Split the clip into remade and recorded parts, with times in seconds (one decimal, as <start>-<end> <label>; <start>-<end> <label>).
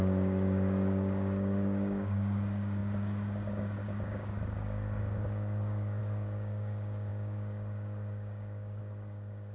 0.0-9.5 remade